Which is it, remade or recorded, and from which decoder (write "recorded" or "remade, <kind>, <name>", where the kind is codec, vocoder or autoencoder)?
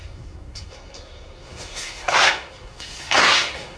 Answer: remade, codec, SNAC